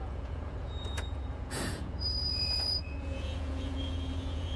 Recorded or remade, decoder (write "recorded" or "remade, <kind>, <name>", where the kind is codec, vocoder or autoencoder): remade, vocoder, Vocos